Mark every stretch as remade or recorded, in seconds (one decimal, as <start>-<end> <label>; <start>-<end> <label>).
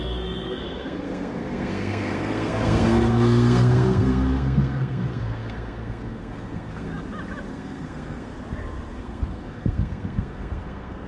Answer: 0.0-6.9 remade; 6.9-7.5 recorded; 7.5-8.3 remade; 8.3-9.0 recorded; 9.0-11.1 remade